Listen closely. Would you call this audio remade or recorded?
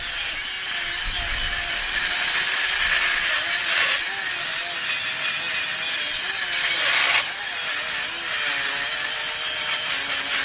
recorded